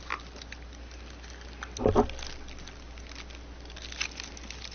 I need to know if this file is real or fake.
real